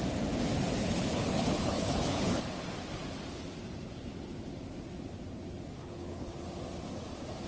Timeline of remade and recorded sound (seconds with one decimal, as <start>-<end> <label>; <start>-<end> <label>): 0.0-0.8 recorded; 0.8-2.4 remade; 2.4-5.8 recorded; 5.8-6.3 remade; 6.3-7.5 recorded